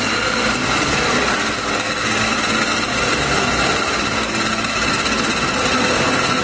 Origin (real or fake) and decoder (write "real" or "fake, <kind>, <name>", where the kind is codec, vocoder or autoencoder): real